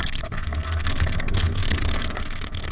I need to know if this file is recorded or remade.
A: remade